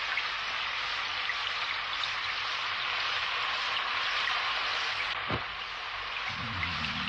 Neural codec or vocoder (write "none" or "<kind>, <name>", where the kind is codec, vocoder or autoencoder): none